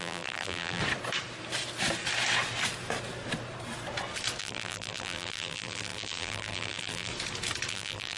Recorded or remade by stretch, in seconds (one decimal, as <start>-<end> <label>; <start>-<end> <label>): 0.0-0.8 remade; 0.8-4.4 recorded; 4.4-7.1 remade; 7.1-7.7 recorded; 7.7-8.2 remade